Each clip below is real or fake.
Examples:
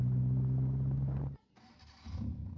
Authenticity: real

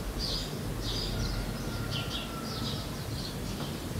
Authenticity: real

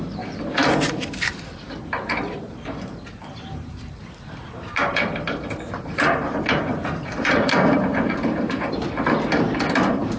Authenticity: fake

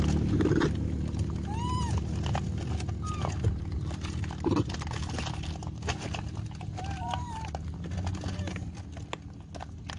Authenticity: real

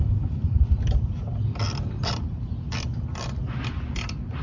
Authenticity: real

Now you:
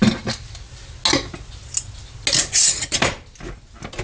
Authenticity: real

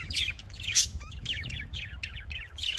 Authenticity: fake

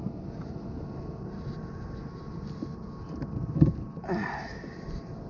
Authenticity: real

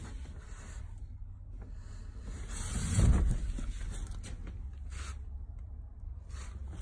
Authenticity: real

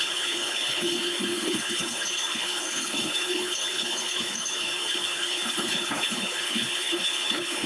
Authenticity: fake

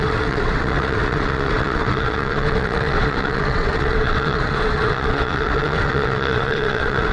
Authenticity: fake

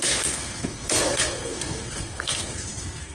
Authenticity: fake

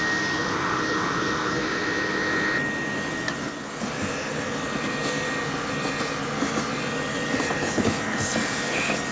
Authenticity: real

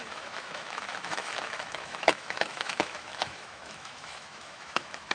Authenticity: fake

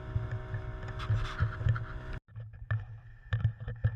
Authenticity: real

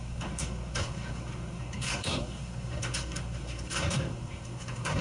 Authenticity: fake